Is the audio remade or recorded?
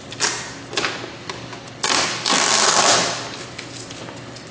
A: recorded